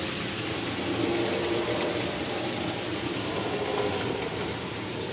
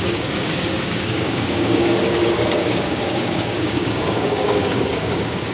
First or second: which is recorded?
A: first